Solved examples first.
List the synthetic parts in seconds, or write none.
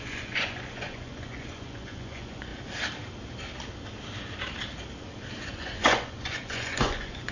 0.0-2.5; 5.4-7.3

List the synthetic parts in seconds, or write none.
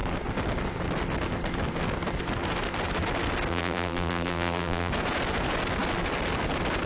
3.5-4.9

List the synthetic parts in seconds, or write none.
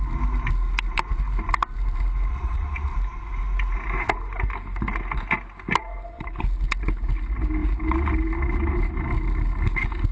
2.3-2.9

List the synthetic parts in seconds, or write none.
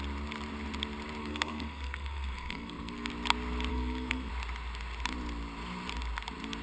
1.2-3.1; 3.7-4.3